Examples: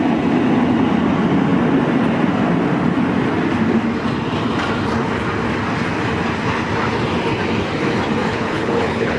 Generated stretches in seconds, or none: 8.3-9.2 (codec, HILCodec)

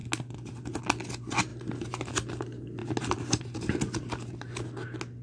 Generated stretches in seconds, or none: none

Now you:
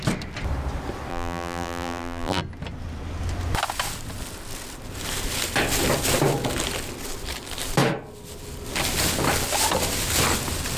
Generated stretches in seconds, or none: 1.1-2.4 (vocoder, BigVGAN v2)

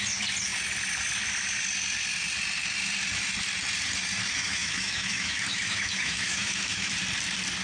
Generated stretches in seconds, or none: 4.4-6.9 (autoencoder, DAC-VAE)